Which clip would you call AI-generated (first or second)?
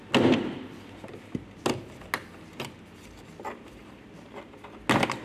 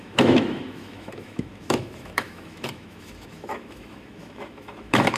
second